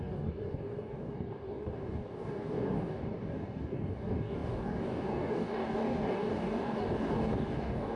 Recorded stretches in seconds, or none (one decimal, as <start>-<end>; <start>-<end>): none